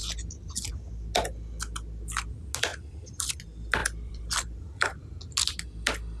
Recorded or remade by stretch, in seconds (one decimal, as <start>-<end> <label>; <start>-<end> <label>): 0.0-2.7 recorded; 2.7-3.4 remade; 3.4-3.8 recorded; 3.8-5.0 remade; 5.0-6.2 recorded